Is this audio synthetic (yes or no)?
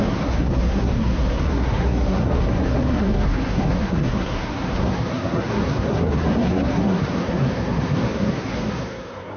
yes